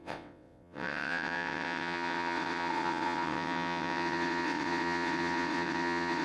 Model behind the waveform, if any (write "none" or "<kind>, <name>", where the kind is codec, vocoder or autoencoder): vocoder, WaveNeXt